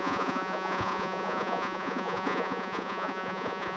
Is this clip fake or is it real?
fake